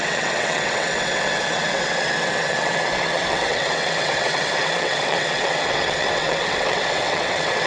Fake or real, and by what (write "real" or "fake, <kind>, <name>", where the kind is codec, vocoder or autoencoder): fake, vocoder, WaveNeXt